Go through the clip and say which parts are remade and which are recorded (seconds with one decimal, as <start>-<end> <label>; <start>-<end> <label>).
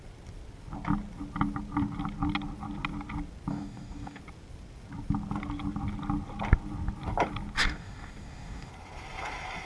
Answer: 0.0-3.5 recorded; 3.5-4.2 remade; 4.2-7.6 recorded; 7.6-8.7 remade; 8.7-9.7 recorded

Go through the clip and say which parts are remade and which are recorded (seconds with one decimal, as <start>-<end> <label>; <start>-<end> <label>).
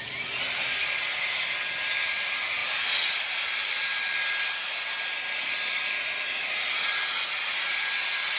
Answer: 0.0-8.4 recorded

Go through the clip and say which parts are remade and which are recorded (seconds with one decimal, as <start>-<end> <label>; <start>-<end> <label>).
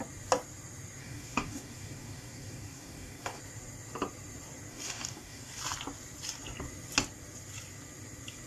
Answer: 0.0-1.0 recorded; 1.0-3.4 remade; 3.4-4.7 recorded; 4.7-5.6 remade; 5.6-8.5 recorded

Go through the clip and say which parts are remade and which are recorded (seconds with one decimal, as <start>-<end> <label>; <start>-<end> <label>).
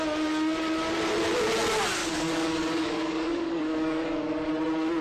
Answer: 0.0-2.0 recorded; 2.0-4.5 remade; 4.5-5.0 recorded